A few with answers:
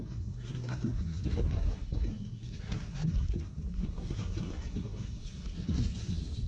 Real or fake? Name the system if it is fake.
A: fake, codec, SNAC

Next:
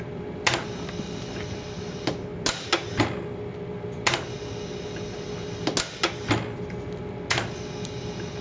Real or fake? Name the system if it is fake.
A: real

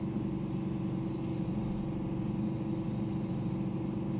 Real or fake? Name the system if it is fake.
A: real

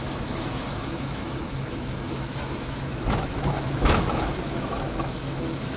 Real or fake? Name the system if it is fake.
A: fake, autoencoder, DAC-VAE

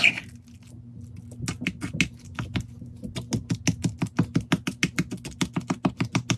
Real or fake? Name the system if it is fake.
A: real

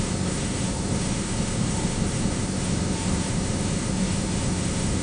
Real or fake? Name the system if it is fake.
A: fake, codec, SNAC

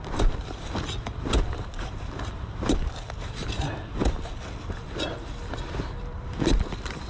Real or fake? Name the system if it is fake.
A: real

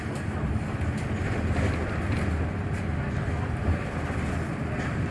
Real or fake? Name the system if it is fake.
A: real